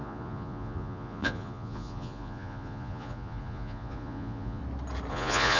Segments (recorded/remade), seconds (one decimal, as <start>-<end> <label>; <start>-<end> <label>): 0.0-4.6 remade; 4.6-5.1 recorded; 5.1-5.6 remade